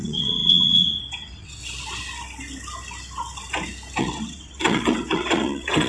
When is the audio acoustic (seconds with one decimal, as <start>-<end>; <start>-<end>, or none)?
1.6-4.0